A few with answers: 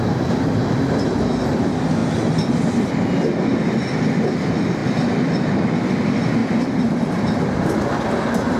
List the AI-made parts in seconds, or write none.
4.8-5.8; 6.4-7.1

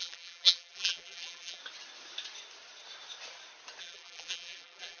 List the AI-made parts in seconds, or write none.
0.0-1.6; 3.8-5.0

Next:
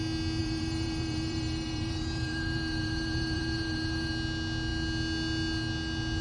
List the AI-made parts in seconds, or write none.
0.4-4.1

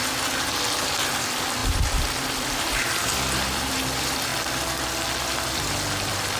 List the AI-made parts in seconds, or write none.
0.0-4.3

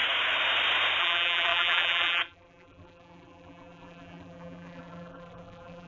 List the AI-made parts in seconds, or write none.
1.0-5.9

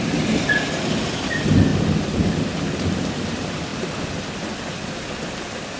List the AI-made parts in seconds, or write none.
none